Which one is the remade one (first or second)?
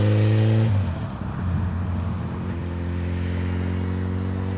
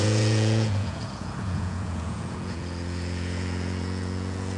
second